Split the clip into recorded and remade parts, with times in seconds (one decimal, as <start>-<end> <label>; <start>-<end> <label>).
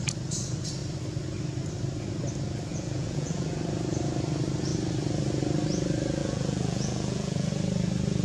0.0-2.7 recorded; 2.7-3.5 remade; 3.5-6.2 recorded; 6.2-7.5 remade; 7.5-8.2 recorded